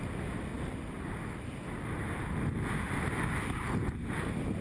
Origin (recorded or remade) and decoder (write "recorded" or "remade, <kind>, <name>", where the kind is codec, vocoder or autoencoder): recorded